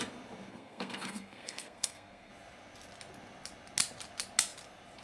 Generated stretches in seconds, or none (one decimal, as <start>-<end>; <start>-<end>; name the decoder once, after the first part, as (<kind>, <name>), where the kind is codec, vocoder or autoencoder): 0.5-2.3 (codec, SNAC)